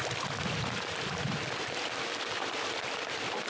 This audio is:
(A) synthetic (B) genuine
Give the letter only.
B